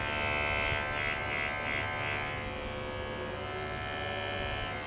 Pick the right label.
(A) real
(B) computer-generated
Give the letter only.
A